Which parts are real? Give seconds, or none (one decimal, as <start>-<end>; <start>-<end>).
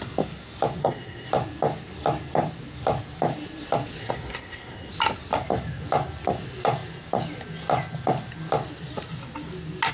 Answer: 0.0-0.8; 1.3-4.0; 4.9-9.9